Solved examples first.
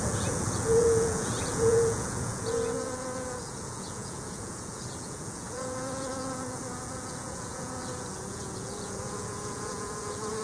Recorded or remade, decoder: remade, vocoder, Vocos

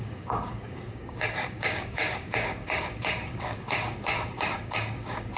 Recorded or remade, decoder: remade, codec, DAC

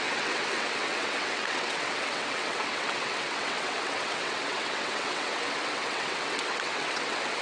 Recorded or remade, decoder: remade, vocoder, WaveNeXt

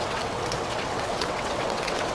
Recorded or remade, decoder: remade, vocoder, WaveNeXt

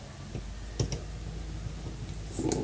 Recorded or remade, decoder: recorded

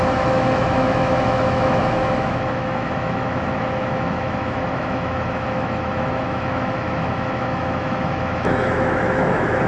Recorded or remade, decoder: remade, autoencoder, DAC-VAE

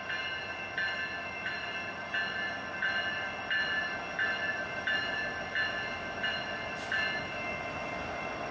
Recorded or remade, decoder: recorded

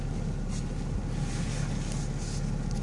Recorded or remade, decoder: recorded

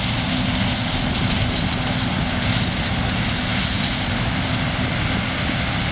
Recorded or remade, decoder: recorded